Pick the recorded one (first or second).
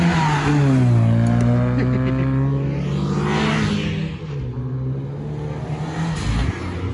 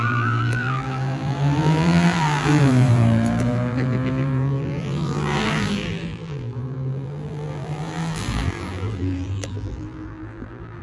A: first